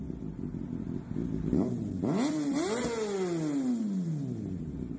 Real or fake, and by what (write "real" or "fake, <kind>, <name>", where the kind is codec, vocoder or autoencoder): real